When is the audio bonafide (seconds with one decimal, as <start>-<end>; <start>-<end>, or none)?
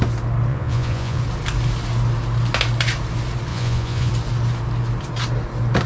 0.0-0.5; 1.2-3.5; 4.1-5.9